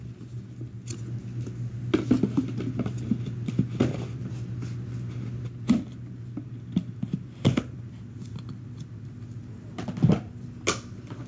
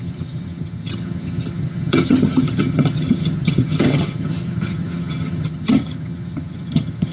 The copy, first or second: second